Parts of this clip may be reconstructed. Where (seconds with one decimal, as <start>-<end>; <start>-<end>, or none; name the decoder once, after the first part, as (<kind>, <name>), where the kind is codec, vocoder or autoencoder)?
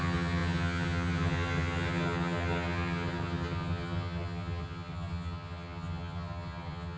0.0-7.0 (vocoder, HiFi-GAN)